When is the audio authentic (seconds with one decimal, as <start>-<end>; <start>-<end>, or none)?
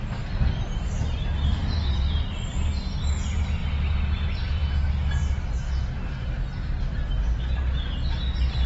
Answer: 0.0-1.6; 2.7-8.7